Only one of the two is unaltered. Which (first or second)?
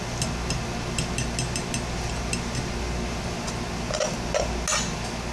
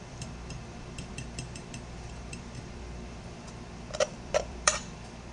first